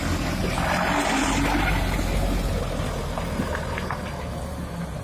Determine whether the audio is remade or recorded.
recorded